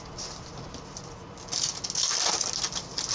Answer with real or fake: real